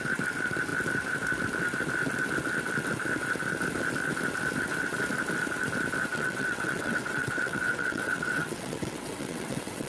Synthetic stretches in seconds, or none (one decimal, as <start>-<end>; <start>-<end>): 6.1-9.9